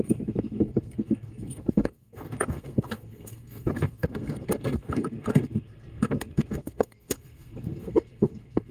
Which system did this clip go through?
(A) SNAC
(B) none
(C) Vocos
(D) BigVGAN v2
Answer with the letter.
A